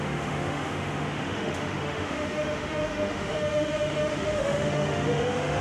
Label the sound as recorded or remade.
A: remade